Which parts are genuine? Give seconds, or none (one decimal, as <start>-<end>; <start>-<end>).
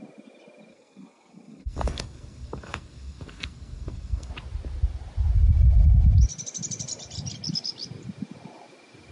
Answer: 0.0-0.7; 4.3-9.1